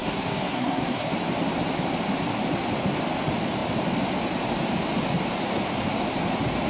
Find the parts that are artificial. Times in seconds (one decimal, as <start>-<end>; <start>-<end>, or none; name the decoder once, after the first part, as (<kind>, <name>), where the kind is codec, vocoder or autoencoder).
0.0-1.1 (codec, SNAC)